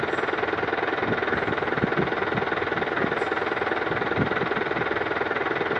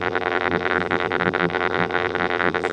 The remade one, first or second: second